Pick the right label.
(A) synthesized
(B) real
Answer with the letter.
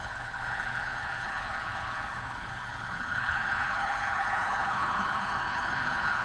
A